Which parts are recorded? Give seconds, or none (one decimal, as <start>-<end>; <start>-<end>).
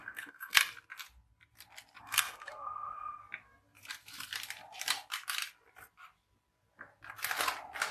0.6-2.0; 3.2-7.9